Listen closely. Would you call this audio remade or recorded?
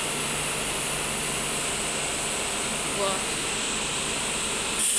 recorded